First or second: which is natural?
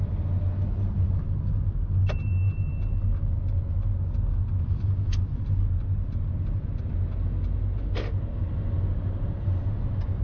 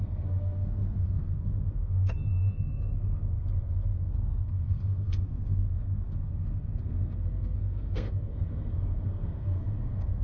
first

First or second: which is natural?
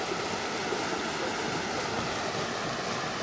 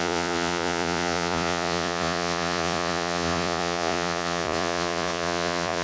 first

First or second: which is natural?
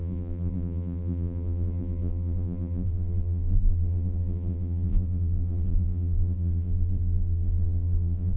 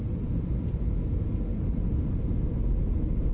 second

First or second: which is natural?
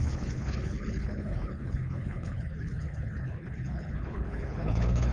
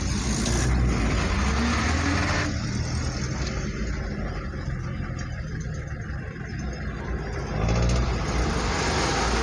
second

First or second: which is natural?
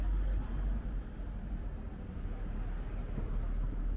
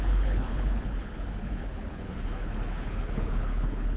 first